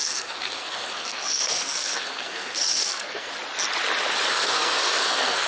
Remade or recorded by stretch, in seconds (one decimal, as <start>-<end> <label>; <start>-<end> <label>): 0.0-3.3 remade; 3.3-4.3 recorded; 4.3-5.5 remade